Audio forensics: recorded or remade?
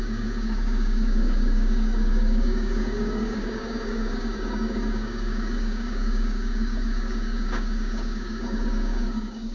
remade